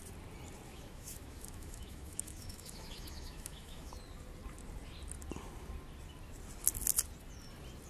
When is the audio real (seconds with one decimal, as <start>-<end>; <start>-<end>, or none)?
0.0-0.7; 3.9-7.9